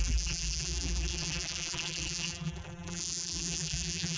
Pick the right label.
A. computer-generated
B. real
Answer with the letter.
A